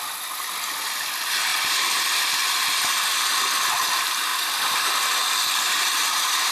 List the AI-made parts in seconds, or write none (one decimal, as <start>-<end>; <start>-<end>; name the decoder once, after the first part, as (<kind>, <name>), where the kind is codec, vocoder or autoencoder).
1.5-2.6 (vocoder, BigVGAN v2)